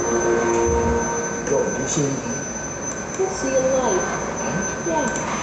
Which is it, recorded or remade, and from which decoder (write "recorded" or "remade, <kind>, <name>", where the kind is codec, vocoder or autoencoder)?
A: recorded